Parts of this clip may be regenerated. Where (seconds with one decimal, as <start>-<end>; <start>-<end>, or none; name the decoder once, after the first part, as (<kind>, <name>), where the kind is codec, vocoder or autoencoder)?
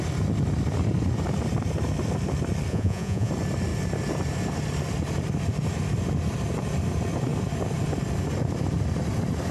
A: 2.7-3.3 (vocoder, Vocos)